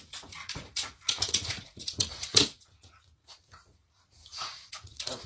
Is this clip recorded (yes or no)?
no